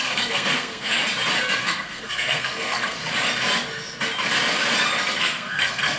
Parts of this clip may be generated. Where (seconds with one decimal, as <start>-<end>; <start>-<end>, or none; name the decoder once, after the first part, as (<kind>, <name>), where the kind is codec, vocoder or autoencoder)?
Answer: 0.0-1.0 (codec, SNAC); 1.6-3.0; 5.2-6.0